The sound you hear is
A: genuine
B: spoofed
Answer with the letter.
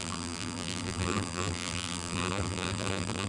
B